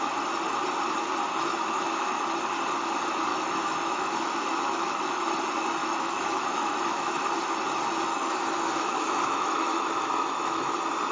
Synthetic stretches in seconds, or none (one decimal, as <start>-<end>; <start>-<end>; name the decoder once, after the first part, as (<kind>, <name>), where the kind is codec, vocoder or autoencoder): 1.3-2.2 (autoencoder, DAC-VAE); 3.3-5.3; 5.8-7.3; 8.1-10.7